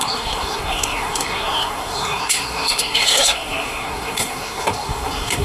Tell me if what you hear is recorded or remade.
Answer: remade